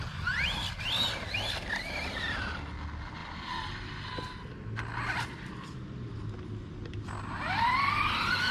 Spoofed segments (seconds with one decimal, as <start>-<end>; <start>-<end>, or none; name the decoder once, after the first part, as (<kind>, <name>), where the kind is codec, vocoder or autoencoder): none